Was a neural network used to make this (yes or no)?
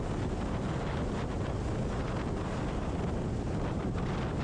no